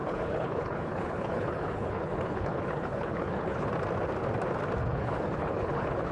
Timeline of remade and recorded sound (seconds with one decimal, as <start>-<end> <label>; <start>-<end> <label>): 0.0-3.7 remade; 3.7-4.8 recorded; 4.8-6.1 remade